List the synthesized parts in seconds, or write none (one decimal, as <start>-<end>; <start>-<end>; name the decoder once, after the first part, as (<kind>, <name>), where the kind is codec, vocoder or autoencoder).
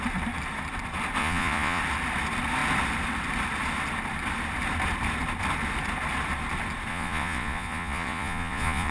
1.2-1.8 (vocoder, Vocos); 6.9-8.9